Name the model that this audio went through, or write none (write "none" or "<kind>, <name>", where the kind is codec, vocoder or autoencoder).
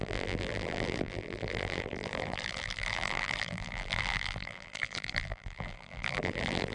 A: vocoder, BigVGAN v2